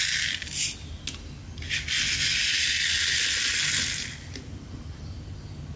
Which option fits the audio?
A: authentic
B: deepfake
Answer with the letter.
A